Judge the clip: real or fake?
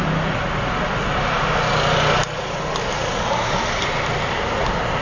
real